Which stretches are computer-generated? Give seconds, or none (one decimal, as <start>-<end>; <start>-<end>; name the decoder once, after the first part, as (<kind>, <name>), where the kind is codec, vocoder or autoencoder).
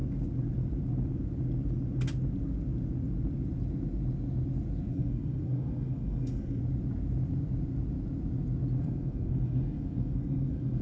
4.9-6.6 (codec, SNAC); 8.8-10.8